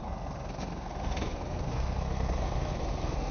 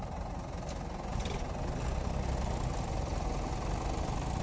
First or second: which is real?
second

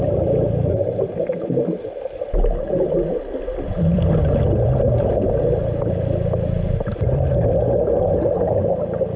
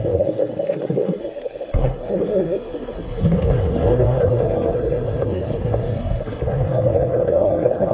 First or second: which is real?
first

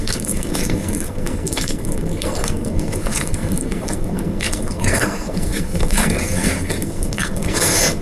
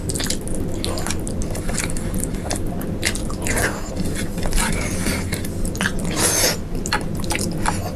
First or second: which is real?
second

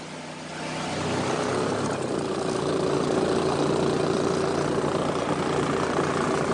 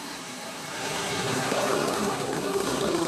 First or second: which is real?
first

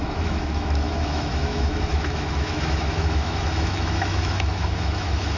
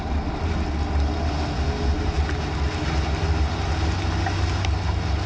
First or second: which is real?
second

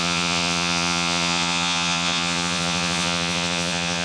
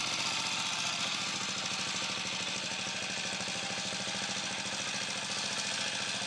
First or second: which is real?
second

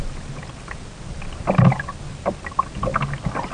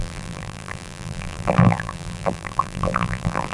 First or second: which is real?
first